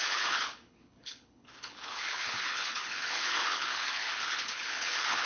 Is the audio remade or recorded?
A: remade